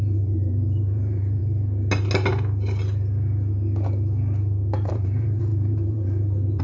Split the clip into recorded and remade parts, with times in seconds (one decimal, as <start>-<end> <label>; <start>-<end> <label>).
0.0-1.4 remade; 1.4-4.9 recorded; 4.9-6.6 remade